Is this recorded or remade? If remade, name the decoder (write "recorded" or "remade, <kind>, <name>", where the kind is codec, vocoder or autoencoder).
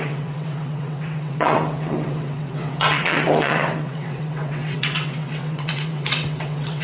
remade, vocoder, WaveNeXt